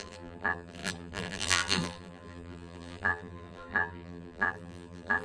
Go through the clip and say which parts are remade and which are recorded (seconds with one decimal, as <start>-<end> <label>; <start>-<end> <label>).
0.0-5.2 remade